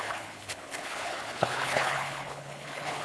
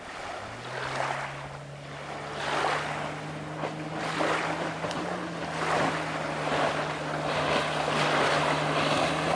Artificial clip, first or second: first